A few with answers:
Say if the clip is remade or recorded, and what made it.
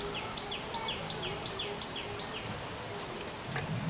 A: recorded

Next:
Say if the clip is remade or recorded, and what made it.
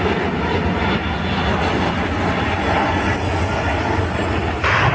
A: recorded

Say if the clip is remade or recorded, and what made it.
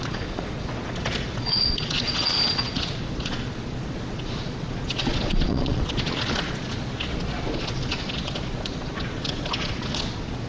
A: remade, vocoder, Vocos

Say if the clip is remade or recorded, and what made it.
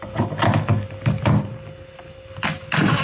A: recorded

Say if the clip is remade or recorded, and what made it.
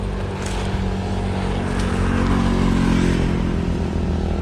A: recorded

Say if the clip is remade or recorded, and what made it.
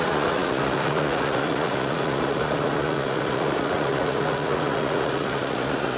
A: remade, vocoder, Vocos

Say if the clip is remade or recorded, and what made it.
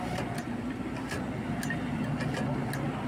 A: recorded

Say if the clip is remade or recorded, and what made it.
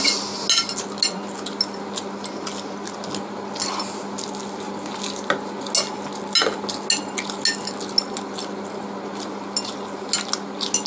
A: recorded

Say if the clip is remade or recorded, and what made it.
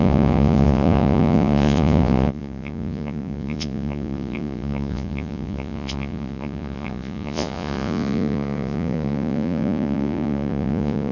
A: remade, vocoder, Vocos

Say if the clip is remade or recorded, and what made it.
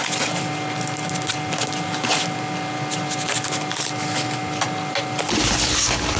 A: recorded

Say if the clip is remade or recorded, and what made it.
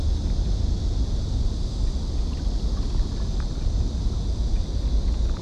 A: recorded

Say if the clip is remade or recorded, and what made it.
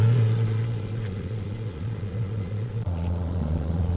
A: remade, vocoder, Vocos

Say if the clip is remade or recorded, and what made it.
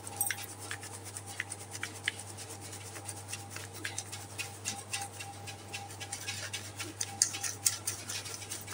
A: recorded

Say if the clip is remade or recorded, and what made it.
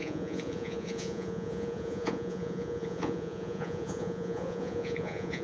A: remade, vocoder, Vocos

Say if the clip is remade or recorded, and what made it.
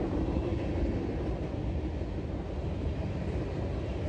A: recorded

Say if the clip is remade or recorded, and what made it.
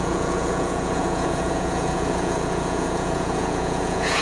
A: remade, vocoder, Vocos